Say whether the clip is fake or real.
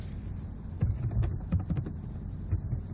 fake